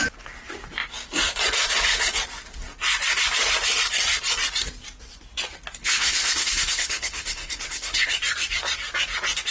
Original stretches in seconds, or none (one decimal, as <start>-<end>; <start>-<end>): 0.0-5.8; 8.1-9.5